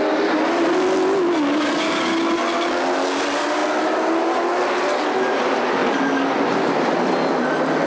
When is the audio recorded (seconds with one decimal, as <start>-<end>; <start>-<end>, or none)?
0.0-7.9